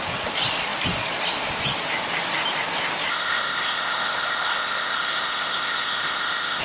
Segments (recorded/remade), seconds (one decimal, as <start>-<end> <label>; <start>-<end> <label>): 0.0-3.1 recorded; 3.1-6.6 remade